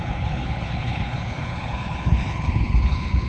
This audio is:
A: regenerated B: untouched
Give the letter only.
A